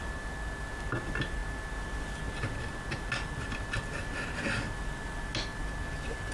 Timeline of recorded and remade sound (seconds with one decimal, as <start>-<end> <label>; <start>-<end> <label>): 0.0-6.3 recorded